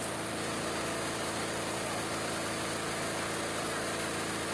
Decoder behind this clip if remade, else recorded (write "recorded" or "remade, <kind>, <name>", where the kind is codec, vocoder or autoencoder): recorded